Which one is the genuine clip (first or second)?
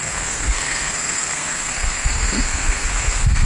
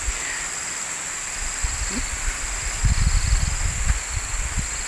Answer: second